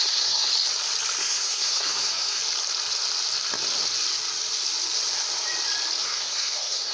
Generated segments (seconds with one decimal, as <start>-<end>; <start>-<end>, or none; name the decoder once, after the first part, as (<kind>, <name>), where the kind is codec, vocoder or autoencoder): 0.0-0.5 (codec, SNAC); 1.2-2.4; 6.0-6.9